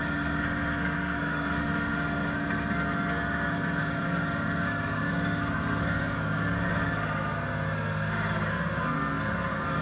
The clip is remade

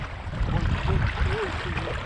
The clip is recorded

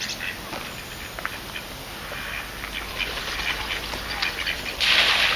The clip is recorded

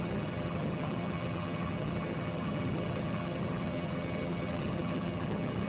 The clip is remade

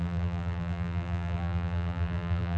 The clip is remade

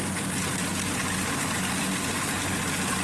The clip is recorded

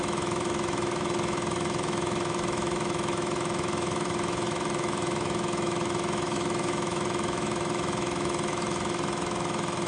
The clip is remade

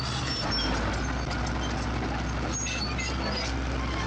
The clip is recorded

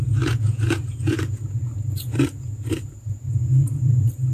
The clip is remade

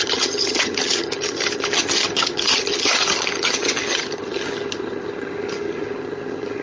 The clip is remade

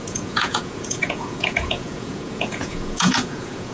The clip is remade